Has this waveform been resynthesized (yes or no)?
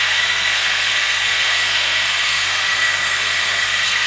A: yes